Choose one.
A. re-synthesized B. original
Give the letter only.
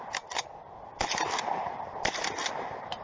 B